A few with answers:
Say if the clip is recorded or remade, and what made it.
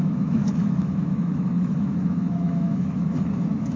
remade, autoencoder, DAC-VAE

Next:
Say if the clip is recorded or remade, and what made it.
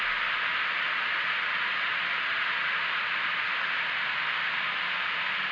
recorded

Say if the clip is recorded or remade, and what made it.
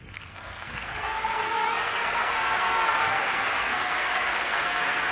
remade, codec, SNAC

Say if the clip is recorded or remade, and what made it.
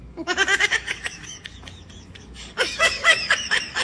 remade, codec, DAC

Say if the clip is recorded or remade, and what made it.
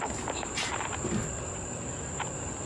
recorded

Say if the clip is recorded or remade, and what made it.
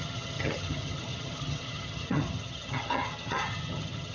remade, vocoder, HiFi-GAN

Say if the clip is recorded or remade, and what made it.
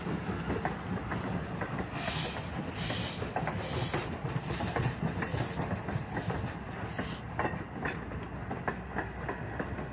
recorded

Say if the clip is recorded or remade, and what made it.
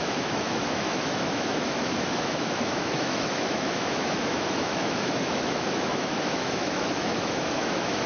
remade, autoencoder, DAC-VAE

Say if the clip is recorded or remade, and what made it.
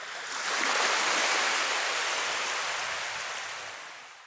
recorded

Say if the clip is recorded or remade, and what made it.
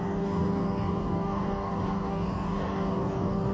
remade, codec, DAC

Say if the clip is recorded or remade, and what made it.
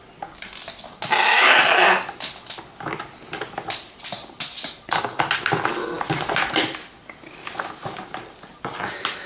recorded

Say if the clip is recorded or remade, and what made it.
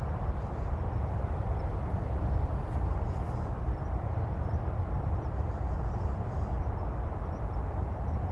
recorded